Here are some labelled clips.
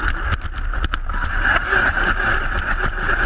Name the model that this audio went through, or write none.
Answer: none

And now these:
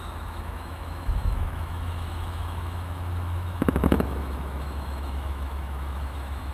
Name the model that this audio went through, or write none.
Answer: autoencoder, DAC-VAE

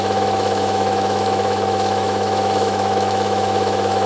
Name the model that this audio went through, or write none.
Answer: autoencoder, DAC-VAE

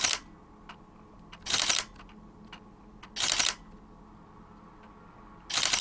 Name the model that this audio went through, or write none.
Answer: none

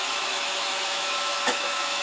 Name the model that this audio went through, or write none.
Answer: autoencoder, DAC-VAE